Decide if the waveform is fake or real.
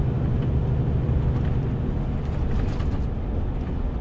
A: real